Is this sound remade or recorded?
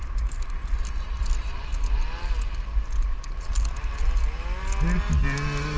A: recorded